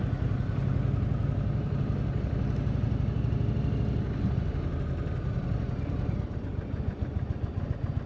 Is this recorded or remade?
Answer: recorded